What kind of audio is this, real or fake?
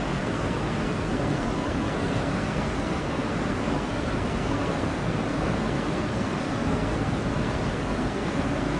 fake